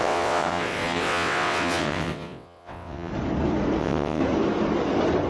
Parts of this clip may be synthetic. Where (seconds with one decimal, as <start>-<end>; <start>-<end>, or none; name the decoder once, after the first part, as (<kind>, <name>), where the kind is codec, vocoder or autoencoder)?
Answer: 0.0-3.1 (vocoder, WaveNeXt); 3.8-4.2